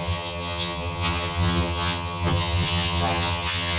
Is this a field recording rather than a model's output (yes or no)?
no